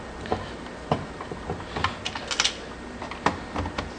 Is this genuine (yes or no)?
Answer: yes